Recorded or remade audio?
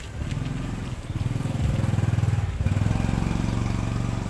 recorded